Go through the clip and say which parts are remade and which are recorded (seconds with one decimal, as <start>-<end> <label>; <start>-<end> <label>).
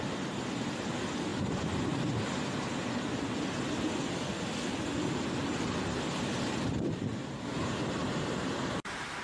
0.0-7.1 recorded; 7.1-9.2 remade